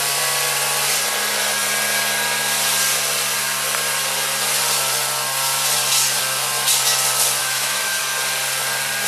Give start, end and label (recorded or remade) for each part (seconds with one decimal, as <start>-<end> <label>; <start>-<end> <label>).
0.0-7.4 recorded; 7.4-8.0 remade; 8.0-9.1 recorded